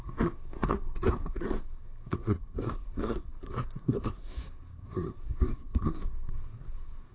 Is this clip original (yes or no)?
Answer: no